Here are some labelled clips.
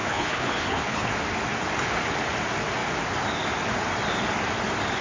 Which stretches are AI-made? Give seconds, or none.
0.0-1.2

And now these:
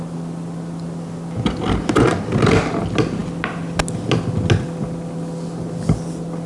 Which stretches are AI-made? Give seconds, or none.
none

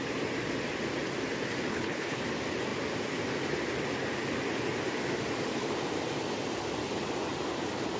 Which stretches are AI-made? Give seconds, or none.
1.7-2.2

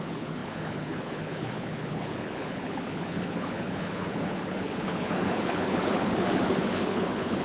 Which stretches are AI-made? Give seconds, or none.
0.0-7.4

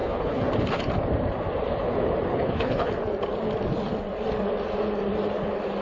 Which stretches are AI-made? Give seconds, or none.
0.0-0.5; 2.3-2.9

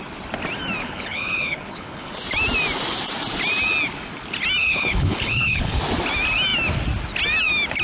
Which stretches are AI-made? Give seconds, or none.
0.8-2.1; 4.6-5.8

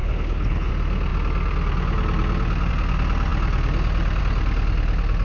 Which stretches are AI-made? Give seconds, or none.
0.0-0.7